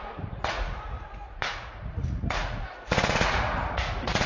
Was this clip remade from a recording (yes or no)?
yes